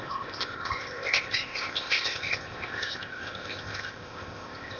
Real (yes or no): no